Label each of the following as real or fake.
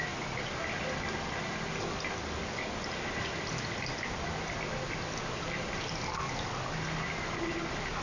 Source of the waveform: real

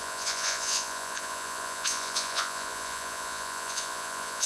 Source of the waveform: fake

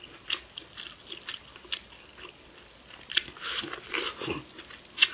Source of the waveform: real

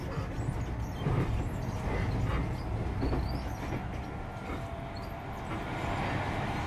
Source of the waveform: real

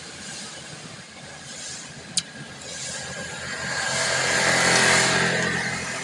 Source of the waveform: real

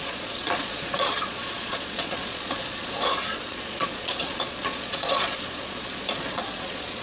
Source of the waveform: fake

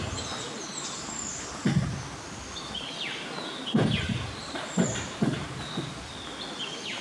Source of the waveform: real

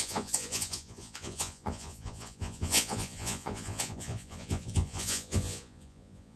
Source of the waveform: fake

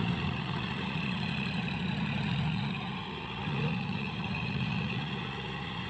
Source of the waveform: fake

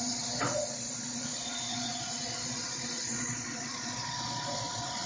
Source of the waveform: fake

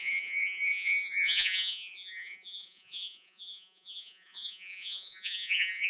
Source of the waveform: fake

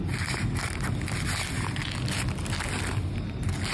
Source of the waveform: real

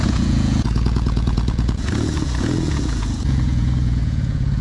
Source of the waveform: fake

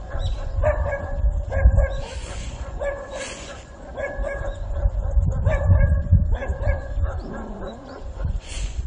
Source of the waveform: fake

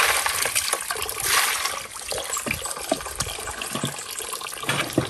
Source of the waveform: real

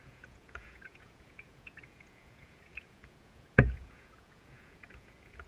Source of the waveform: fake